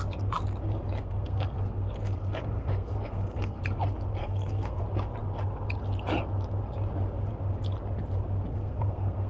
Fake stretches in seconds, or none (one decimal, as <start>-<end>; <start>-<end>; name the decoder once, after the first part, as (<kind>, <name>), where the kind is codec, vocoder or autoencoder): 1.0-3.6 (codec, SNAC); 4.2-4.8; 8.5-9.3